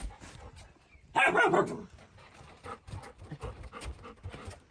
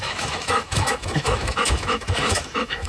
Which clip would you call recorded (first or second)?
first